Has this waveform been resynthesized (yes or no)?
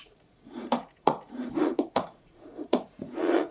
yes